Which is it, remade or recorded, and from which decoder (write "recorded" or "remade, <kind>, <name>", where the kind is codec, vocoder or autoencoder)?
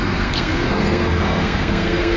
remade, codec, SNAC